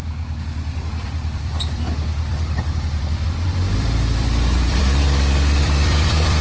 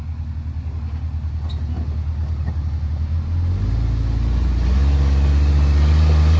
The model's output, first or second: first